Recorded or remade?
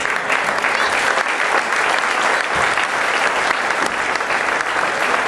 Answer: recorded